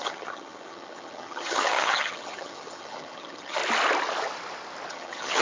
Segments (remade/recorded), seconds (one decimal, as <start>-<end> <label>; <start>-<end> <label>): 0.0-3.6 remade; 3.6-4.9 recorded; 4.9-5.4 remade